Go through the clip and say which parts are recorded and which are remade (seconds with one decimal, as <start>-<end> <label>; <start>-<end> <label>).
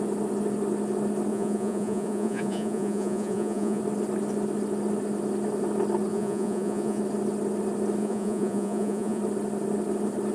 0.0-1.3 recorded; 1.3-3.8 remade; 3.8-6.1 recorded; 6.1-7.0 remade; 7.0-8.0 recorded; 8.0-9.2 remade; 9.2-10.3 recorded